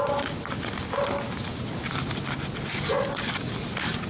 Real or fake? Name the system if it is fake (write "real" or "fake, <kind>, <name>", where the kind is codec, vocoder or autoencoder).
real